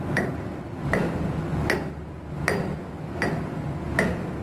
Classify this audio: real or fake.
real